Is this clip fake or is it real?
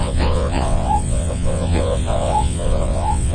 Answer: fake